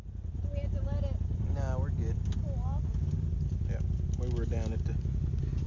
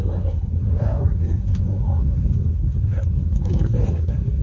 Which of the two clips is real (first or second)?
first